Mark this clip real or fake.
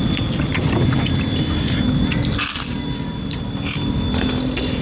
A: real